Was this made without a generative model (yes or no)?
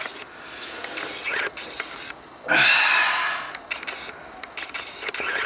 yes